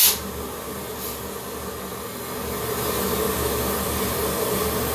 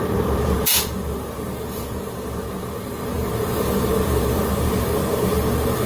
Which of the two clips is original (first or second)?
first